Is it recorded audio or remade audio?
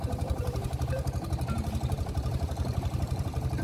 remade